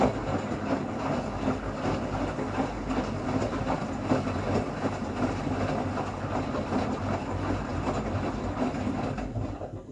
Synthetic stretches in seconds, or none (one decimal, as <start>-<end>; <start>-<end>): none